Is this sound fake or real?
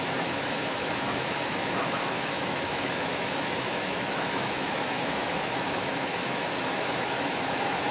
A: fake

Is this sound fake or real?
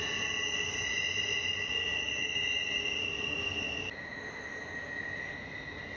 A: real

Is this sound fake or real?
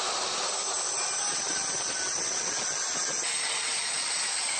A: real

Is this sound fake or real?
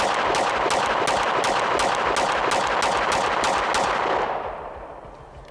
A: real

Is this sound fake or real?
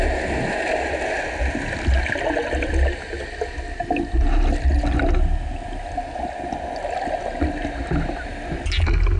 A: real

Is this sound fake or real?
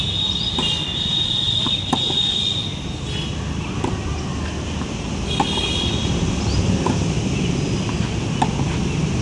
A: real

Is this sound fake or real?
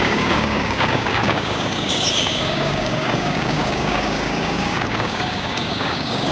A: fake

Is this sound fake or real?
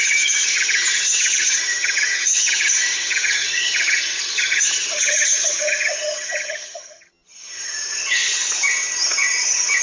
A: fake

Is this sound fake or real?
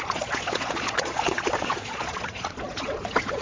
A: fake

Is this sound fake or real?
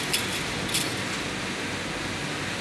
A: real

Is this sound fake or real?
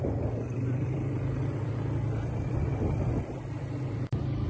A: fake